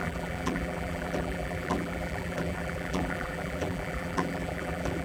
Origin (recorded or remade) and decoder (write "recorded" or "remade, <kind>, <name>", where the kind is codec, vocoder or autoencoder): remade, vocoder, BigVGAN v2